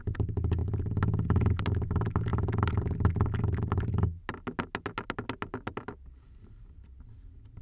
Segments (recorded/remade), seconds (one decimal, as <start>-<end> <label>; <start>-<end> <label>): 0.0-7.6 recorded